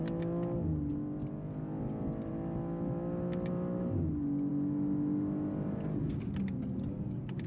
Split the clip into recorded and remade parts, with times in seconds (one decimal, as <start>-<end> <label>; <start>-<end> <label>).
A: 0.0-7.5 recorded